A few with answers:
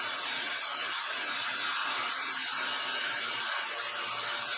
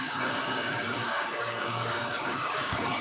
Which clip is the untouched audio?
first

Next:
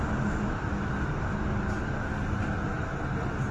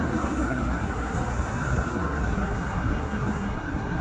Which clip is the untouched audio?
first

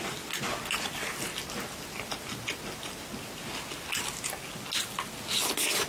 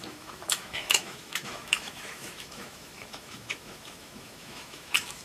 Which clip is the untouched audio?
first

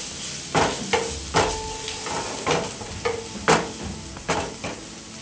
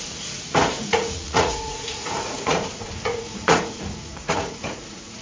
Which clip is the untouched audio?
first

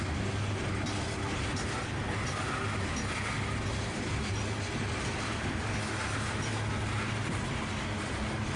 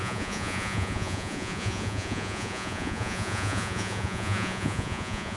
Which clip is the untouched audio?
first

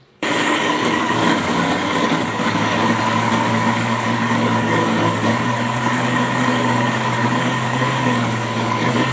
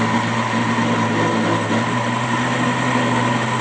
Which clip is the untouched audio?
second